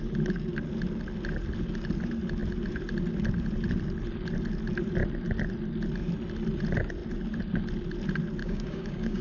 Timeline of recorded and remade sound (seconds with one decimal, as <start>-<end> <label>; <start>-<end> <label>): 0.0-8.4 recorded; 8.4-9.2 remade